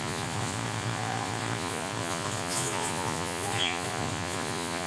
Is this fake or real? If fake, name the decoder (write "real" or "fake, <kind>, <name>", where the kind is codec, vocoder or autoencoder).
fake, vocoder, Vocos